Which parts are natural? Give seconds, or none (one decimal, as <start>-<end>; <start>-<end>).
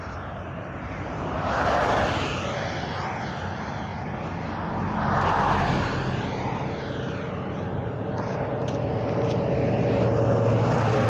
0.0-11.1